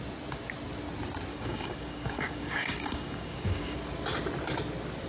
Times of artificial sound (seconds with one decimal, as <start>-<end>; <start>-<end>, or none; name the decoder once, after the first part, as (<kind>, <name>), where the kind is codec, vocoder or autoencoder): 1.3-3.8 (codec, DAC)